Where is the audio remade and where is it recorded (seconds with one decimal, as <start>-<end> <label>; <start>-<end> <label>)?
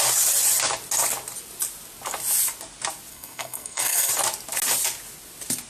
0.0-3.1 recorded; 3.1-4.1 remade; 4.1-5.7 recorded